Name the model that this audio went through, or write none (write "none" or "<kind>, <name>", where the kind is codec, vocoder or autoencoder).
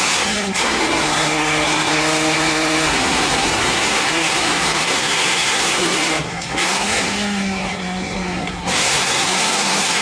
codec, SNAC